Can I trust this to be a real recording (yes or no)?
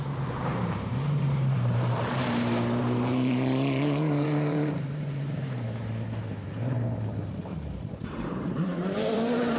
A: no